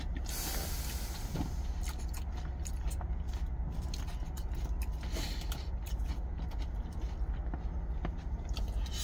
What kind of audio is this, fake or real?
real